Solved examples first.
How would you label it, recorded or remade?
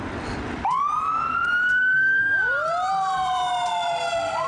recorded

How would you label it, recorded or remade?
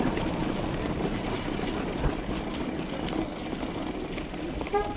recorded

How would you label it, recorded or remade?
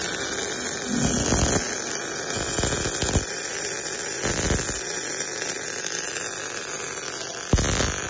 recorded